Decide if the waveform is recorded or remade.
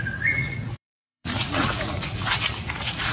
remade